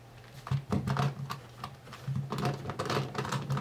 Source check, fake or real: real